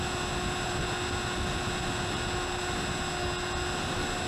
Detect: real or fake real